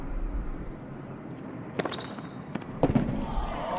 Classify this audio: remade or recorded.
remade